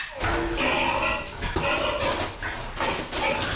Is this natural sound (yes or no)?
yes